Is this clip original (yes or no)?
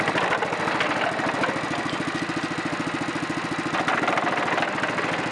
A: yes